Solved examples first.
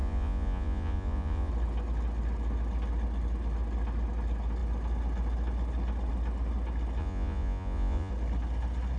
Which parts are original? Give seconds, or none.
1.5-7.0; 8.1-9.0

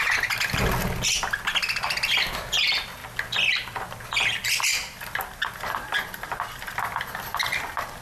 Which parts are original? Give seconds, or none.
0.0-8.0